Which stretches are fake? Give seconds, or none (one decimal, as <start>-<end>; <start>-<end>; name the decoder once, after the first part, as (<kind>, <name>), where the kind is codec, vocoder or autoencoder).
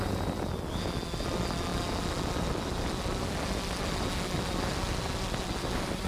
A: none